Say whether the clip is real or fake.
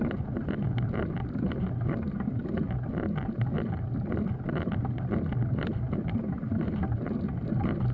real